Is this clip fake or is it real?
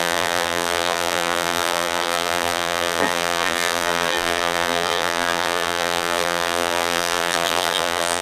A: fake